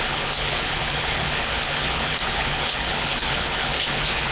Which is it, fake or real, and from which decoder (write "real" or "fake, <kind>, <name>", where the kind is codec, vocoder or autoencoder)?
fake, codec, HILCodec